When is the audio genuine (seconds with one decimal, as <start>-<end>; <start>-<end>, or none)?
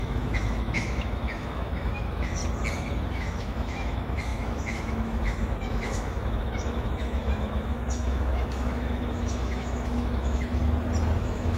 2.4-3.1; 10.6-11.2